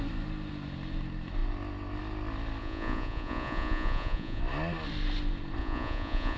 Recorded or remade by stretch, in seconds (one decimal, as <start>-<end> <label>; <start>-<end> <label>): 0.0-2.6 recorded; 2.6-4.4 remade; 4.4-5.6 recorded; 5.6-6.4 remade